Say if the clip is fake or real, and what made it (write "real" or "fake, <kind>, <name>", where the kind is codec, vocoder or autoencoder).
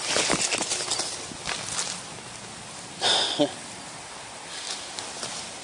fake, vocoder, BigVGAN v2